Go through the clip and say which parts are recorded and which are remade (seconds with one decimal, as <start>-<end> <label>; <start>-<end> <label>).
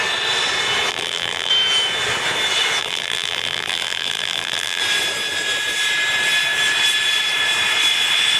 0.0-0.9 recorded; 0.9-1.5 remade; 1.5-2.8 recorded; 2.8-4.8 remade; 4.8-8.4 recorded